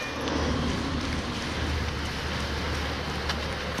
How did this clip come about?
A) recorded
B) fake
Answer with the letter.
A